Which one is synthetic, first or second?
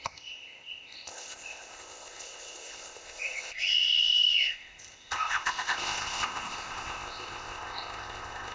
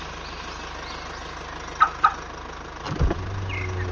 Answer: first